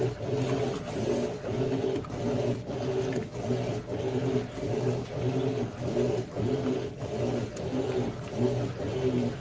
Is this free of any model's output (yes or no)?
yes